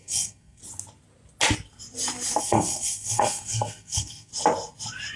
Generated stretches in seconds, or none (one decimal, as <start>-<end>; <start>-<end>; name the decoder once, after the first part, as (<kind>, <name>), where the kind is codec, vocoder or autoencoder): 0.0-0.6 (codec, SNAC); 2.4-4.3